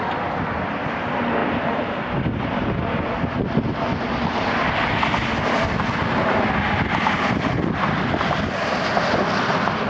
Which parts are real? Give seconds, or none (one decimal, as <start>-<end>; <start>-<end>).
0.0-9.9